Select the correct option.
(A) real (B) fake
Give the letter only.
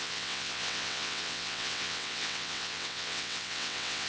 B